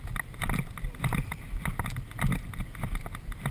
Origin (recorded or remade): recorded